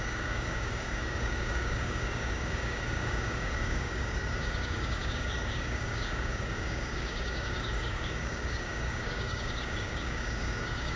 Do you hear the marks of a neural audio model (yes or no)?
yes